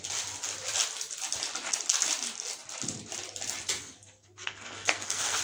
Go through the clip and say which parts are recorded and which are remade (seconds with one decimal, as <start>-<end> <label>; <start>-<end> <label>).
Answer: 0.0-3.8 recorded; 3.8-5.4 remade